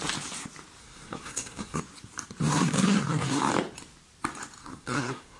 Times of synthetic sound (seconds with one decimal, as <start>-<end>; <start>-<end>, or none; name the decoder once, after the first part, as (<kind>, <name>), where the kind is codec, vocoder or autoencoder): 0.8-1.8 (codec, SNAC); 2.4-3.5; 4.6-5.4